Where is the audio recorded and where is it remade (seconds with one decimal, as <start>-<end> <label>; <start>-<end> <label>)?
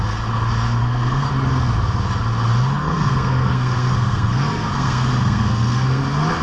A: 0.0-0.8 recorded; 0.8-1.3 remade; 1.3-2.8 recorded; 2.8-6.0 remade; 6.0-6.4 recorded